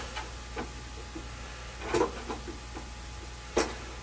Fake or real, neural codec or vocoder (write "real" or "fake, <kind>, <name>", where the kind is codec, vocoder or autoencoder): real